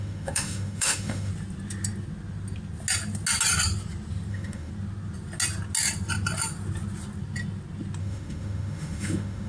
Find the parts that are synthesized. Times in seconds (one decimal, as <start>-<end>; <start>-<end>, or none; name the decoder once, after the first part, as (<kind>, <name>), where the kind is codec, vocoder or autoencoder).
0.0-1.3 (autoencoder, DAC-VAE); 4.3-4.7; 8.0-9.5